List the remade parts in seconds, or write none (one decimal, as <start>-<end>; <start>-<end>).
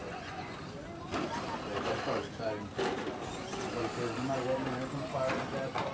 0.0-0.6